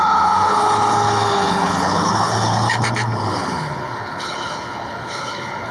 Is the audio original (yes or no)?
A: no